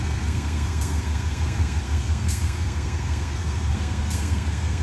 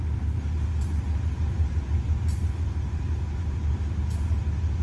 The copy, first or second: first